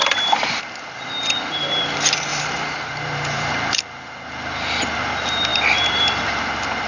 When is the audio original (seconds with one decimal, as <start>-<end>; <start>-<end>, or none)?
1.6-2.3; 3.5-5.5; 6.2-6.9